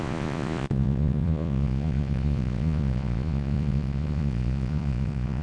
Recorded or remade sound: remade